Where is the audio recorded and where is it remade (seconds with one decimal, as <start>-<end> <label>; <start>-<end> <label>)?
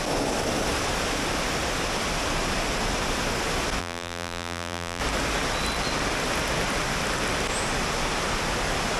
0.0-3.8 recorded; 3.8-5.0 remade; 5.0-9.0 recorded